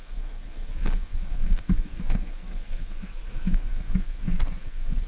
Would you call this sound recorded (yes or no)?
no